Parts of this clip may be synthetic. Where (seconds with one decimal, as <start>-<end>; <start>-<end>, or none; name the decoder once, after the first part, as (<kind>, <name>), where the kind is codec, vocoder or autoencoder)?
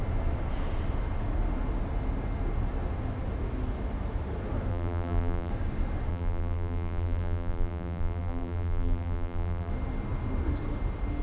4.7-5.5 (vocoder, BigVGAN v2); 6.1-9.7